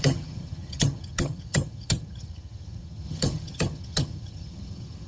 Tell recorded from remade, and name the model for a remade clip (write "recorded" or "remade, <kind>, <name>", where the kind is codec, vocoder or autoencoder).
remade, vocoder, HiFi-GAN